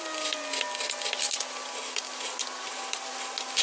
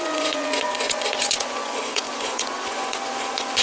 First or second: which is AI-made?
second